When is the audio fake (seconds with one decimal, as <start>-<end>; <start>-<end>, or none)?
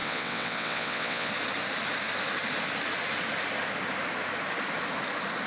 0.0-1.3